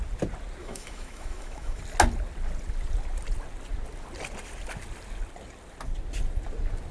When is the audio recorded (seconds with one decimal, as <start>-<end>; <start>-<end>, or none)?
0.0-0.6; 1.8-6.9